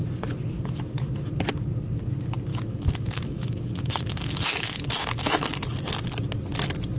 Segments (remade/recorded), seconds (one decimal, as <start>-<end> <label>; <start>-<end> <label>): 0.0-2.5 recorded; 2.5-5.6 remade; 5.6-7.0 recorded